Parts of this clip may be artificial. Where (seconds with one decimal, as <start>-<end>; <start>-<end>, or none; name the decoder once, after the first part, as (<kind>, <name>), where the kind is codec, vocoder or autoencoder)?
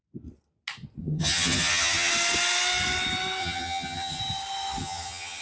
1.0-2.1 (vocoder, HiFi-GAN); 3.4-4.2; 4.8-5.4